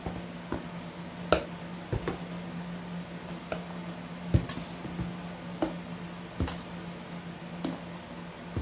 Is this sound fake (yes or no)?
no